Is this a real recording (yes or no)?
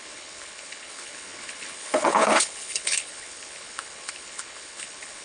no